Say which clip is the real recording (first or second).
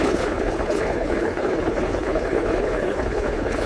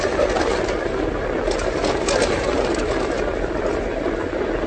second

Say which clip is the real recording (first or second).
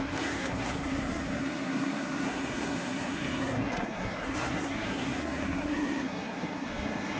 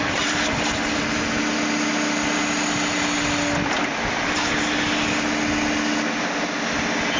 second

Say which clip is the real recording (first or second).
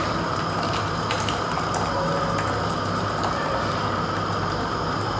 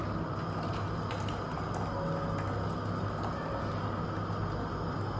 second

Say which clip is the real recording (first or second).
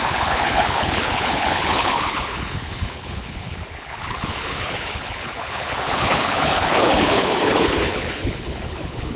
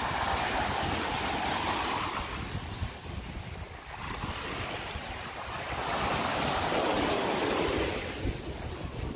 second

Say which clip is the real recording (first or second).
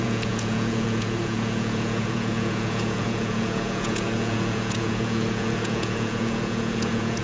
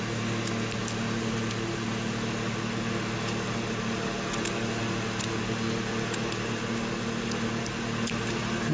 second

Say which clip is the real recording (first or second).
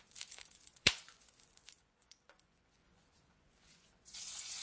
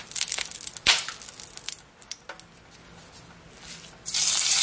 second